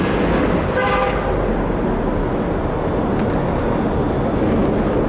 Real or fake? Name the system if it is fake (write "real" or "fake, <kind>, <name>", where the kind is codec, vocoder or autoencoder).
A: real